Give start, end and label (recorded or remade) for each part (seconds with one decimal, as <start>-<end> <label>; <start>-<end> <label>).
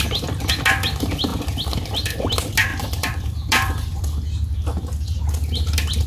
0.0-2.7 recorded; 2.7-4.0 remade; 4.0-6.1 recorded